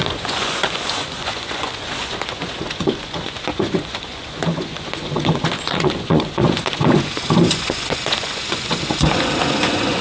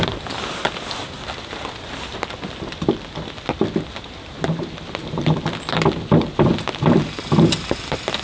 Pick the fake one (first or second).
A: first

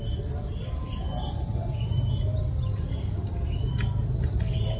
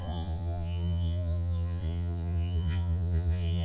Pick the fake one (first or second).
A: second